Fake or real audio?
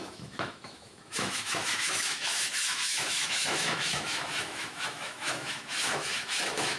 fake